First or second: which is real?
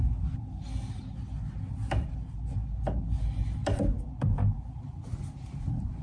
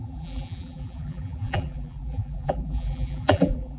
first